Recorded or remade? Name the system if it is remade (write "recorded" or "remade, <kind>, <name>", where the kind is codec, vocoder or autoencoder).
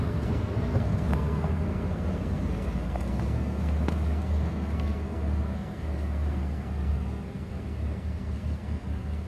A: remade, codec, SNAC